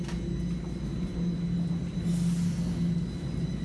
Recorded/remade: recorded